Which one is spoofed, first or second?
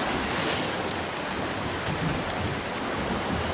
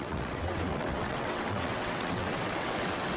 second